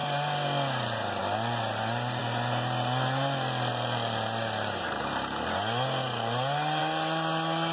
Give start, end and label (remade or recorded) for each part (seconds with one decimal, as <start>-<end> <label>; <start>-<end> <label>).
0.0-7.7 recorded